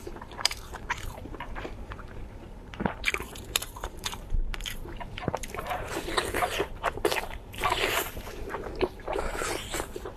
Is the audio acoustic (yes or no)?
no